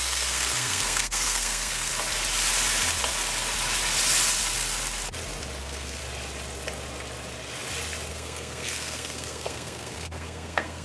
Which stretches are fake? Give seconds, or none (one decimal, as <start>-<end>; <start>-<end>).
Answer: 0.0-1.9; 5.6-6.0; 8.1-10.8